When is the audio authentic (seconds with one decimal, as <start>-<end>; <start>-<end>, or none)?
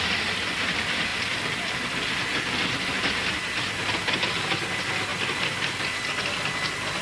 0.0-7.0